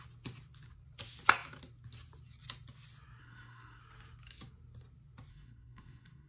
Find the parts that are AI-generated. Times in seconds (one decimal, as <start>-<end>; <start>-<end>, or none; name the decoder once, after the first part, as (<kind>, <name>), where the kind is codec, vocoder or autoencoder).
3.2-3.8 (codec, SNAC); 5.3-6.3